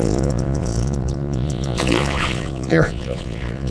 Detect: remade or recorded remade